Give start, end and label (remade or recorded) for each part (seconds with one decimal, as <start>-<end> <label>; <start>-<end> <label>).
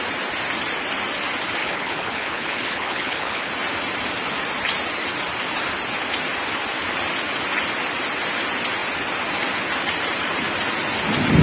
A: 0.0-1.6 recorded; 1.6-3.5 remade; 3.5-11.4 recorded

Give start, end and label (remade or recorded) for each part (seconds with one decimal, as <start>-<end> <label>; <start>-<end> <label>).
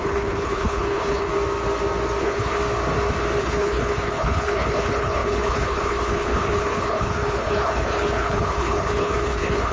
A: 0.0-1.3 remade; 1.3-2.2 recorded; 2.2-2.6 remade; 2.6-3.4 recorded; 3.4-9.7 remade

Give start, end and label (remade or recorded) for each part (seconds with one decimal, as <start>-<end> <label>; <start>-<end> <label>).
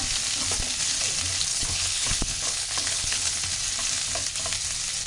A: 0.0-1.5 recorded; 1.5-3.5 remade; 3.5-5.1 recorded